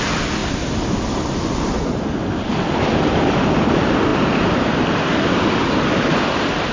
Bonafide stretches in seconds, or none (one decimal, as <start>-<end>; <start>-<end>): 0.0-2.2; 3.0-4.1